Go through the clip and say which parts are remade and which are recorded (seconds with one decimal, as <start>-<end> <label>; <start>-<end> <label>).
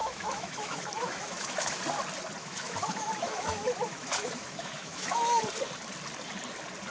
0.0-1.8 remade; 1.8-2.4 recorded; 2.4-5.4 remade; 5.4-6.9 recorded